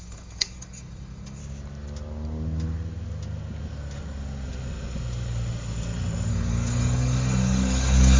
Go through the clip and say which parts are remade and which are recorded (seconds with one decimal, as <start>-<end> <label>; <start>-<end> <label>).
0.0-1.4 remade; 1.4-6.3 recorded; 6.3-8.2 remade